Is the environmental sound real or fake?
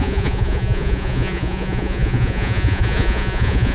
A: fake